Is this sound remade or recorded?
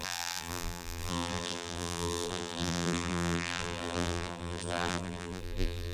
remade